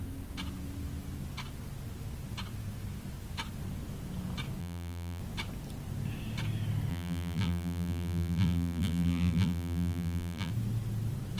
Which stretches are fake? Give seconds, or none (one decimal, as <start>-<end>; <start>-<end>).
4.6-5.2; 6.9-10.5